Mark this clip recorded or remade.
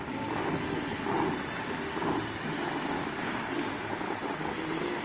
recorded